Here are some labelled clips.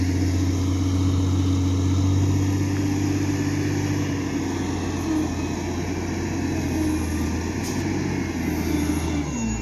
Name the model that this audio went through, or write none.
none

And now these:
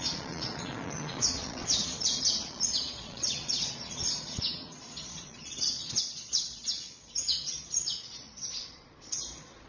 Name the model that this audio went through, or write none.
vocoder, Vocos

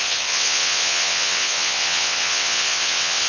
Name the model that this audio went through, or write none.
vocoder, WaveNeXt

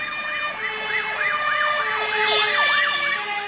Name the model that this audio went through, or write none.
none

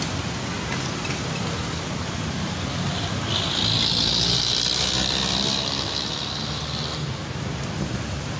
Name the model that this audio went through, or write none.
none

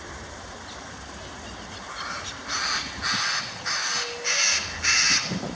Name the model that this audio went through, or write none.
none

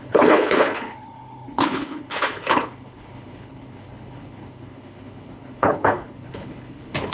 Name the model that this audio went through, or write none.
codec, HILCodec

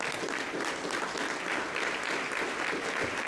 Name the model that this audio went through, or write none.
none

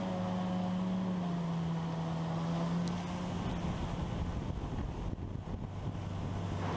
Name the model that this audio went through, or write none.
none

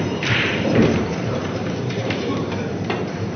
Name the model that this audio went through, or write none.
vocoder, BigVGAN v2